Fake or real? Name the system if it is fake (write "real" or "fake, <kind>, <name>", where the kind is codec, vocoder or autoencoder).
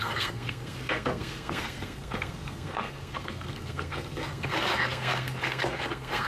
fake, codec, SNAC